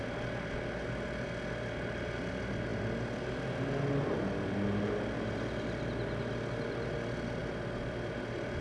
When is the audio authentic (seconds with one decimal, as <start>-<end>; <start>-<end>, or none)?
0.0-7.4